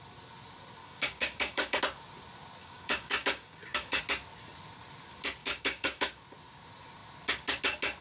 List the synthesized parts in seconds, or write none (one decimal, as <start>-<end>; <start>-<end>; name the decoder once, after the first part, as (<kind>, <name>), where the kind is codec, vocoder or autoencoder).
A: 0.8-1.8 (codec, DAC); 2.6-4.0; 5.4-6.2